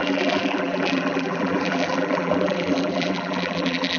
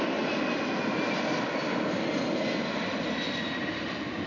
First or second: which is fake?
first